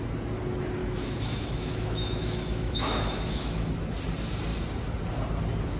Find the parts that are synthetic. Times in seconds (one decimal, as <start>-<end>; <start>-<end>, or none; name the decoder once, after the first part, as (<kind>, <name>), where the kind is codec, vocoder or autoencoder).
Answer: 0.8-3.7 (autoencoder, DAC-VAE)